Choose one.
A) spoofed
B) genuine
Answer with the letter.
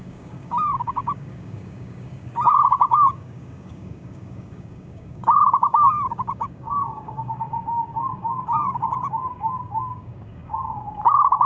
A